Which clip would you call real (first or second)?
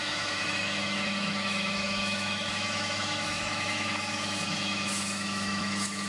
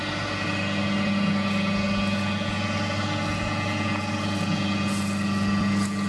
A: second